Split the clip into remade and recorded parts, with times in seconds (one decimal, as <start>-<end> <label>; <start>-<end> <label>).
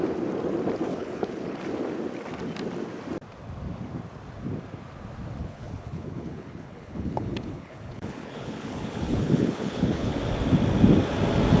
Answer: 0.0-0.9 recorded; 0.9-1.6 remade; 1.6-5.4 recorded; 5.4-10.2 remade; 10.2-11.6 recorded